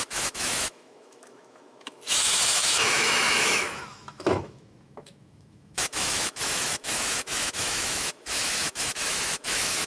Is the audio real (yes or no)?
no